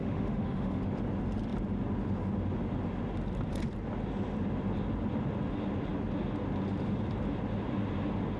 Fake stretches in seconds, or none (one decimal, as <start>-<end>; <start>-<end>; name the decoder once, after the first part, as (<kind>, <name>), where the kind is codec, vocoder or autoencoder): 0.0-0.8 (autoencoder, DAC-VAE)

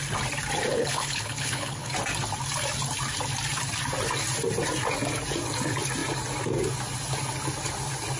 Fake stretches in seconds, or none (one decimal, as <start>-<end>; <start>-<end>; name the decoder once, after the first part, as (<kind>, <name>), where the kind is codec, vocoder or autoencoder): 0.7-1.9 (codec, HILCodec)

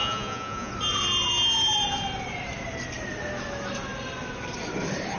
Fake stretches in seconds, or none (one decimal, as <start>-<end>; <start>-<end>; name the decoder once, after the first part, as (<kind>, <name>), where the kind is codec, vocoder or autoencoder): 0.0-0.7 (vocoder, Vocos)